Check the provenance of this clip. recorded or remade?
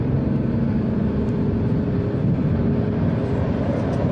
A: remade